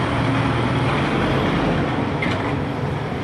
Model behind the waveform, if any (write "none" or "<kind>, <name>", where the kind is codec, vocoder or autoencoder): none